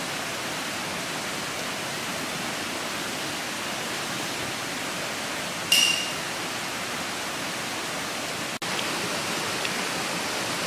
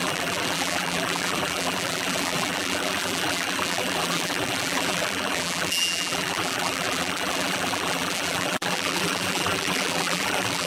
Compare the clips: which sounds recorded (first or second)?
first